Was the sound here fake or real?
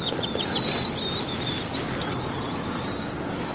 real